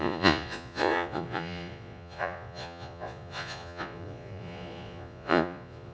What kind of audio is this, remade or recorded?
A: remade